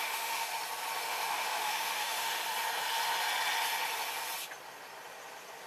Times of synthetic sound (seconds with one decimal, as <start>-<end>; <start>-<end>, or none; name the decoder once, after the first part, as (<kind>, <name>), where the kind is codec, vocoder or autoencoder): 0.0-0.5 (autoencoder, DAC-VAE); 1.0-2.4